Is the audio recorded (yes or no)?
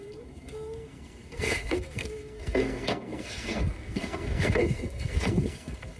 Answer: no